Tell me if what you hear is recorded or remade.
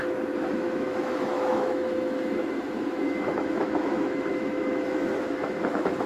remade